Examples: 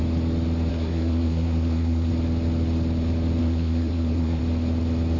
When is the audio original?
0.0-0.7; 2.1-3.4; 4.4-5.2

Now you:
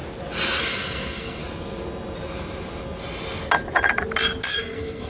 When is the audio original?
0.0-0.6; 1.4-4.5

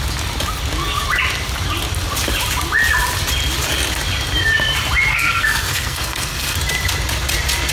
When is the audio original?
0.0-5.1; 6.6-7.7

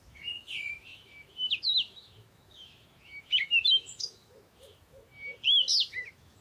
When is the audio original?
5.1-5.9